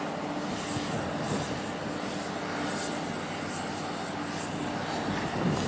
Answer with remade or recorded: recorded